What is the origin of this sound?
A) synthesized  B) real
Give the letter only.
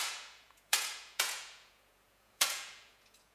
A